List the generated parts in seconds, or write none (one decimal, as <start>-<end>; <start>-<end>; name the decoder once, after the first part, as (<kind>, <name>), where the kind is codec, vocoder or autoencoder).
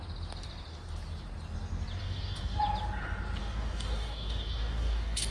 2.0-2.6 (codec, DAC); 3.4-5.3